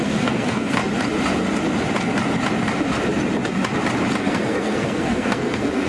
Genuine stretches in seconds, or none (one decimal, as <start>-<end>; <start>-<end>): 0.8-4.2